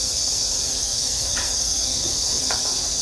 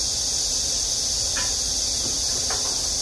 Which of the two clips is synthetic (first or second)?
first